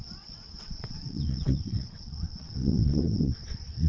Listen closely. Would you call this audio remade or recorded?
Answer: remade